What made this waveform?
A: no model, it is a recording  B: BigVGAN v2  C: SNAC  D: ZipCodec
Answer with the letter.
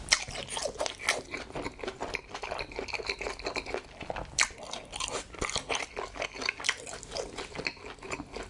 A